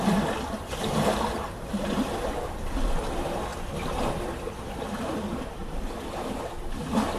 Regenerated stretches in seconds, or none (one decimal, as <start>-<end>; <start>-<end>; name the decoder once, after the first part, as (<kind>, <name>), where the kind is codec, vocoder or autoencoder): 3.5-4.8 (vocoder, BigVGAN v2); 5.6-6.6